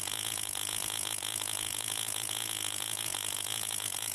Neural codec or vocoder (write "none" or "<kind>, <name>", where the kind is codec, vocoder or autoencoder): vocoder, Vocos